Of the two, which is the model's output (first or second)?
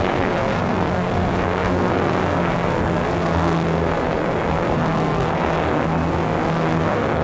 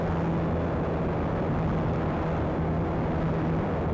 first